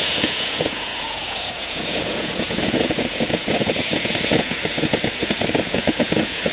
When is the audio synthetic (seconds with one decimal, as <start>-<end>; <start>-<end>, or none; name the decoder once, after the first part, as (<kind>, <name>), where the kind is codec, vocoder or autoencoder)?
0.0-6.5 (vocoder, Vocos)